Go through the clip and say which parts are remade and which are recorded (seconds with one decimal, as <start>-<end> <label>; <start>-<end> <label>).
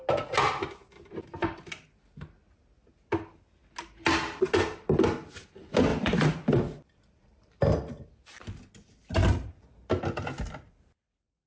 0.0-5.9 recorded; 5.9-8.0 remade; 8.0-9.2 recorded; 9.2-11.5 remade